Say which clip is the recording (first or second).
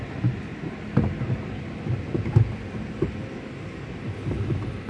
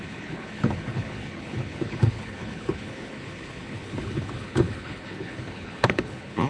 first